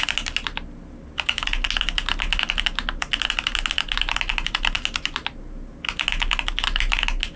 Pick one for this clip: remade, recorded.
recorded